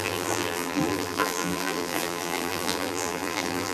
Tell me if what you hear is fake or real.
fake